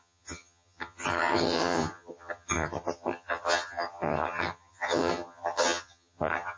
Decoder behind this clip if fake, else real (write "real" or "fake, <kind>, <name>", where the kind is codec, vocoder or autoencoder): fake, vocoder, HiFi-GAN